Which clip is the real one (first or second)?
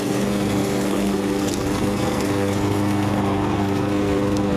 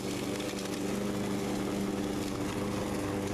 second